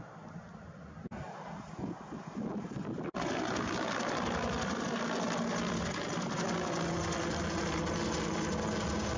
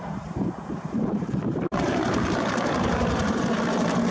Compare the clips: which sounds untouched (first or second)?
first